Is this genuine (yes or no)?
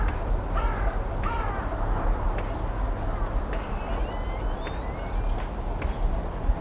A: yes